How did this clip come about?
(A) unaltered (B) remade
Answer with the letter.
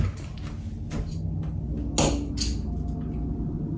A